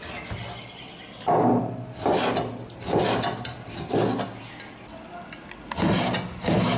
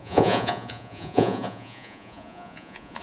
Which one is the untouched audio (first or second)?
first